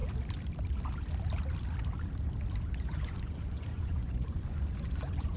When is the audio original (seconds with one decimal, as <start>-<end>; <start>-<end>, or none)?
0.0-2.7

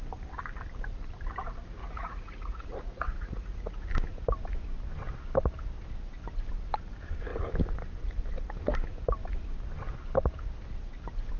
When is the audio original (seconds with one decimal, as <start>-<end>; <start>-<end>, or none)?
0.0-1.8; 3.9-11.4

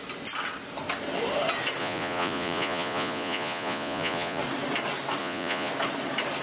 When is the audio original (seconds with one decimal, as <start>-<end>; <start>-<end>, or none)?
0.0-1.8; 4.4-5.2; 5.7-6.4

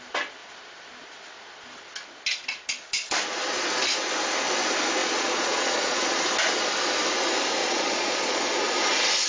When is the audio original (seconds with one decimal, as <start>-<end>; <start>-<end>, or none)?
0.0-5.0; 6.2-7.6; 8.4-9.3